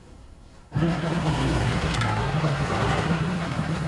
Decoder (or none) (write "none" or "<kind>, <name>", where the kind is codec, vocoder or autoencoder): codec, SNAC